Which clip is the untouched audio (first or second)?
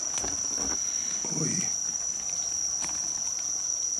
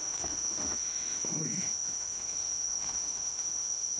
first